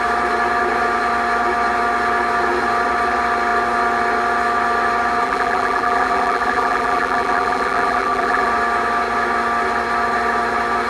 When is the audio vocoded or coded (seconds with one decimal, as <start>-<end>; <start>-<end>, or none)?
5.2-8.5